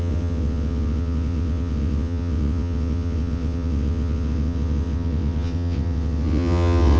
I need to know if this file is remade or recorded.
remade